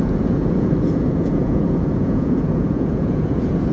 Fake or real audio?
fake